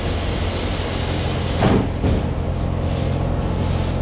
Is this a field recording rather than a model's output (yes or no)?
yes